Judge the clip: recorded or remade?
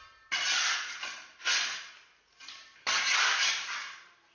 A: recorded